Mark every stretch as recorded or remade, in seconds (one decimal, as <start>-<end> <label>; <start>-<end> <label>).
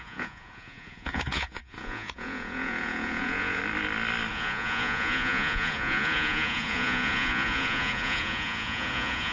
0.0-3.6 remade; 3.6-4.3 recorded; 4.3-9.3 remade